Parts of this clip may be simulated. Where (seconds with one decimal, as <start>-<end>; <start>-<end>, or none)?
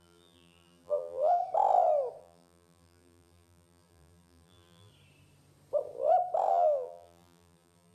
0.0-1.4; 2.2-4.9; 6.5-7.9